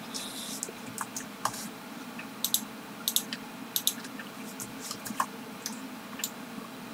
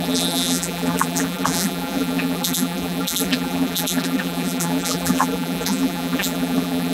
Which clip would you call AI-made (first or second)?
second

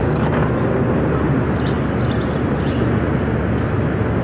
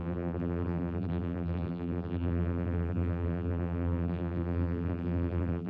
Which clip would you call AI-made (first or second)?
second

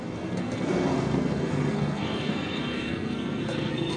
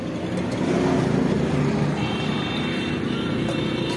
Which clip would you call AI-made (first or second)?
first